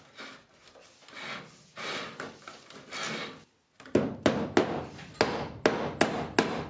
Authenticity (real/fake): real